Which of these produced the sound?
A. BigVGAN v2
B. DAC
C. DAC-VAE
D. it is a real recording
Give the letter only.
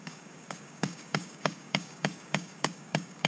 B